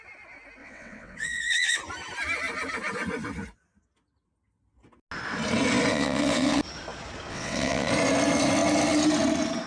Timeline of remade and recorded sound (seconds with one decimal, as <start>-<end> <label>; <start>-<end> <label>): 0.0-0.6 recorded; 0.6-1.8 remade; 1.8-5.9 recorded; 5.9-6.6 remade; 6.6-7.3 recorded; 7.3-7.9 remade; 7.9-9.7 recorded